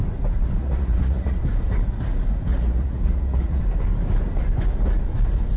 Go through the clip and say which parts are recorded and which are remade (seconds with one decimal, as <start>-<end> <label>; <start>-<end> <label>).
0.0-0.6 recorded; 0.6-1.4 remade; 1.4-2.5 recorded; 2.5-3.6 remade; 3.6-5.6 recorded